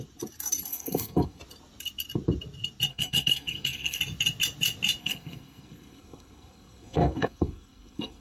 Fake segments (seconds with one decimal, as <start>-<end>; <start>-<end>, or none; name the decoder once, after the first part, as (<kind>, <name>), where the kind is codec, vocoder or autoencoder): 0.7-1.4 (codec, SNAC); 2.9-4.0; 5.0-8.2